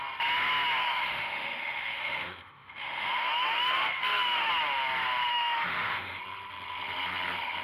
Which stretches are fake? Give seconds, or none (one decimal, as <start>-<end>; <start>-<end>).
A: 0.8-4.5; 5.3-6.2